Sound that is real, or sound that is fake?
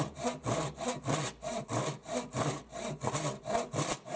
real